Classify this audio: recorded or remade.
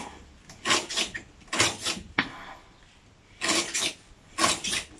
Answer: recorded